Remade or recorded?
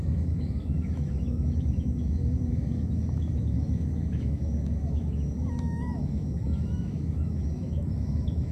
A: remade